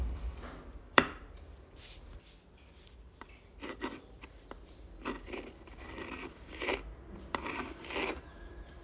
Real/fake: fake